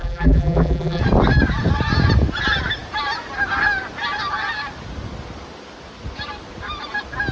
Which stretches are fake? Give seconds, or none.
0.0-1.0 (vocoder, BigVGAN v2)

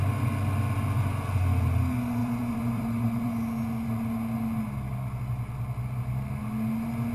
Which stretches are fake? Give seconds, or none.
2.2-3.4 (vocoder, BigVGAN v2)